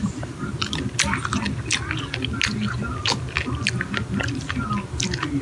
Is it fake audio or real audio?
real